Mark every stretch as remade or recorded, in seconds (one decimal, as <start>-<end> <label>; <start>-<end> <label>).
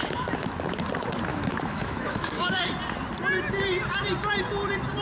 0.0-1.3 recorded; 1.3-2.6 remade; 2.6-5.0 recorded